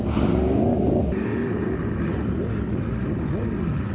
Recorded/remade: recorded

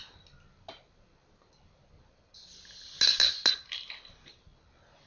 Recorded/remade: recorded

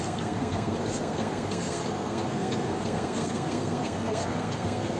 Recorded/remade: remade